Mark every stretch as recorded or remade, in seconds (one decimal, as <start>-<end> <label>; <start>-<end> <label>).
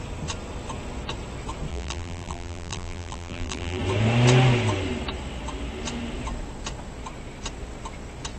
0.0-1.7 recorded; 1.7-3.8 remade; 3.8-8.4 recorded